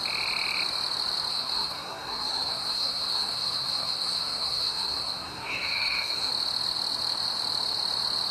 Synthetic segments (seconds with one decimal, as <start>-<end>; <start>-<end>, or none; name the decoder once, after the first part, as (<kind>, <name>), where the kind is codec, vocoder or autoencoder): 1.3-6.3 (codec, SNAC)